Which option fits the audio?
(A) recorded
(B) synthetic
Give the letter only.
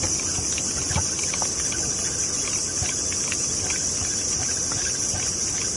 A